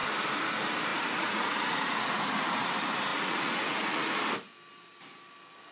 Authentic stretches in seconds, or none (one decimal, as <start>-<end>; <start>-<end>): 0.0-0.9; 2.2-3.1; 4.1-5.7